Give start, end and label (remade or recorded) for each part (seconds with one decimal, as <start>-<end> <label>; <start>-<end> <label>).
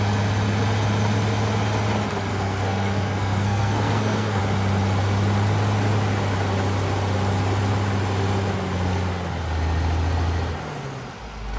0.0-2.3 recorded; 2.3-4.4 remade; 4.4-11.6 recorded